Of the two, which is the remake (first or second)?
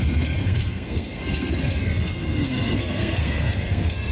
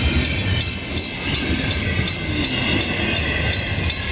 first